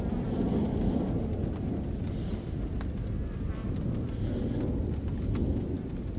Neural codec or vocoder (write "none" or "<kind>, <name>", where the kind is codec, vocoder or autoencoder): none